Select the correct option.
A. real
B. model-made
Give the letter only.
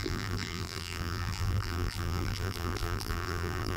B